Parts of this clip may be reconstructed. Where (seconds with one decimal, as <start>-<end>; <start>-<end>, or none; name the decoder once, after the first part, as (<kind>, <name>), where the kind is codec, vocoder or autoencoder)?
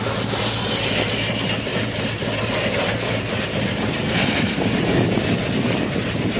1.7-5.4 (vocoder, BigVGAN v2)